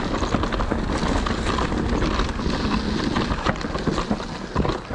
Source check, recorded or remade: recorded